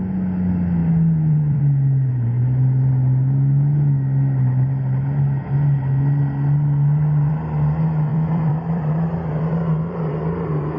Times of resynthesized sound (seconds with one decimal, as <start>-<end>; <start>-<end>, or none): 0.8-1.6; 8.1-10.1